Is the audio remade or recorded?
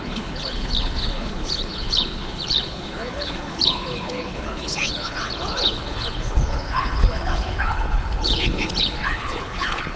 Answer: remade